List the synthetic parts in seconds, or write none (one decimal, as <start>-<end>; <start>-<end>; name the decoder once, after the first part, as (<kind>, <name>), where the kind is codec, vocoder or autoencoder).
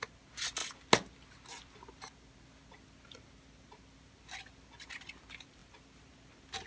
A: none